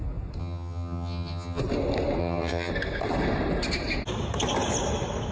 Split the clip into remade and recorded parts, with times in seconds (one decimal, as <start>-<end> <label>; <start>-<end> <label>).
0.0-0.4 recorded; 0.4-1.6 remade; 1.6-2.2 recorded; 2.2-2.7 remade; 2.7-5.3 recorded

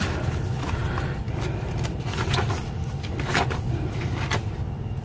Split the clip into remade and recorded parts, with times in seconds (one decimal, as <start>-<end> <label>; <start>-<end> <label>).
0.0-5.0 recorded

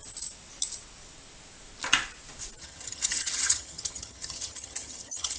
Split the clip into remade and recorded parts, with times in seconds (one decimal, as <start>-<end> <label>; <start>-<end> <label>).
0.0-2.6 recorded; 2.6-5.4 remade

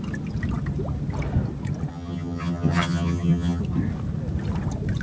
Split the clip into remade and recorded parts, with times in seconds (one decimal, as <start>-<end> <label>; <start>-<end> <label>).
0.0-1.9 recorded; 1.9-3.6 remade; 3.6-5.0 recorded

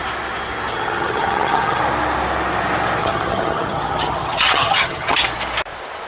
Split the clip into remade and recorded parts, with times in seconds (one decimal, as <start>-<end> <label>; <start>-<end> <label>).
0.0-0.7 recorded; 0.7-1.8 remade; 1.8-3.0 recorded; 3.0-5.2 remade; 5.2-6.1 recorded

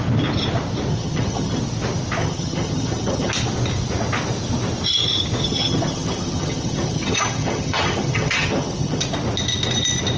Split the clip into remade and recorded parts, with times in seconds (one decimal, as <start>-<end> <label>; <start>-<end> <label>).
0.0-0.9 recorded; 0.9-1.6 remade; 1.6-2.2 recorded; 2.2-3.3 remade; 3.3-5.4 recorded; 5.4-9.0 remade; 9.0-10.2 recorded

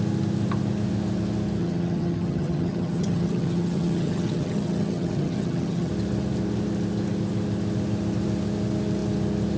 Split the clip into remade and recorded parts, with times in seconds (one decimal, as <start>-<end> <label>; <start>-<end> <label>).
0.0-1.6 recorded; 1.6-5.9 remade; 5.9-9.6 recorded

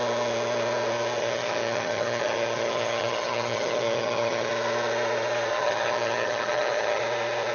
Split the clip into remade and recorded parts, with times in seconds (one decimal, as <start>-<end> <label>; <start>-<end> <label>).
0.0-1.2 recorded; 1.2-4.5 remade; 4.5-5.5 recorded; 5.5-7.0 remade; 7.0-7.5 recorded